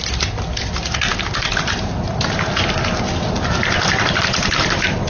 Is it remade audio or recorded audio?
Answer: recorded